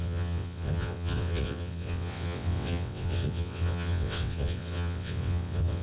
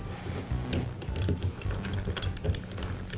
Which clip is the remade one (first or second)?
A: first